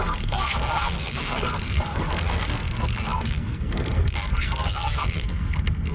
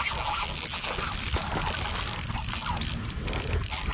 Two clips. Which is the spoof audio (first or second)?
first